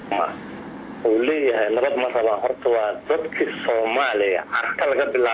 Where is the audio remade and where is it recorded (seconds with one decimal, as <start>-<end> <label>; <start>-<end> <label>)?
0.0-0.6 remade; 0.6-1.4 recorded; 1.4-4.0 remade; 4.0-5.3 recorded